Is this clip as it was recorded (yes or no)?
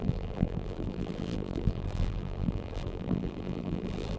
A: no